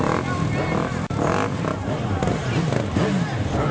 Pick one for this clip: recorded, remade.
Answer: recorded